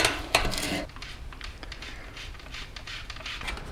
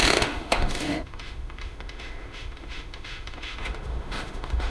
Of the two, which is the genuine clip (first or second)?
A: first